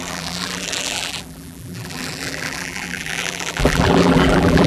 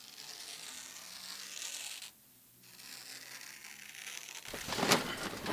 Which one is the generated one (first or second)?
first